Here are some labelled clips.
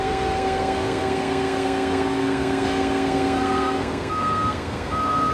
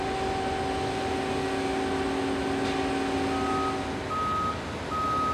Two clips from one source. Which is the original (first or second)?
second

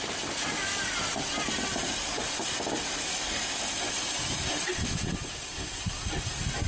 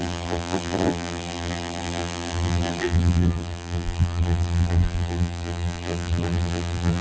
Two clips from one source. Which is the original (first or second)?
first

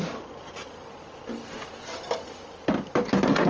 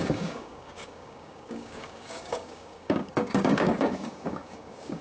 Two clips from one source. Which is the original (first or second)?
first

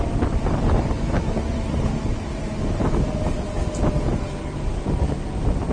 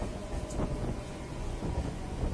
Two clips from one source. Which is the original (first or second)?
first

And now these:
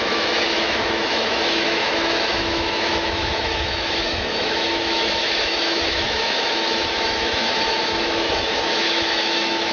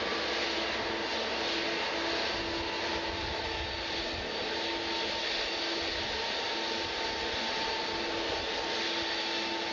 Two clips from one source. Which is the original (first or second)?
second